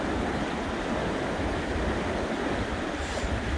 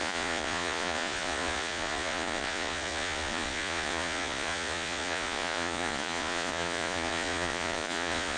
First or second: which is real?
first